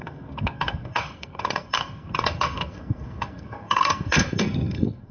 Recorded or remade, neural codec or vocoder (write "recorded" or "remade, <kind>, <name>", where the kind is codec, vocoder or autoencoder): remade, codec, SNAC